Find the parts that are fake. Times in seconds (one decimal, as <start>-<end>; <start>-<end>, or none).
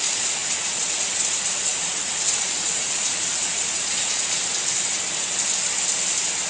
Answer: 0.4-4.3